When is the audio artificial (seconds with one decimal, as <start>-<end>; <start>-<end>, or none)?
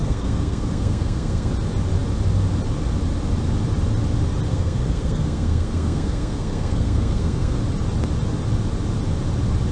0.0-1.5; 4.5-7.6